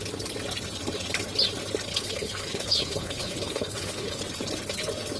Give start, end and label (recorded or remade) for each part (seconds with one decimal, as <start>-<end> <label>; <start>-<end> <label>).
0.0-1.9 recorded; 1.9-4.2 remade; 4.2-5.2 recorded